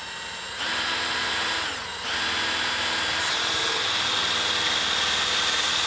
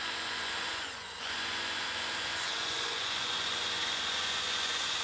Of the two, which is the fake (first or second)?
second